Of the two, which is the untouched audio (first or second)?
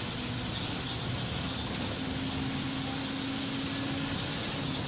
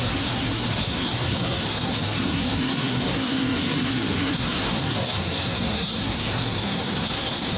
first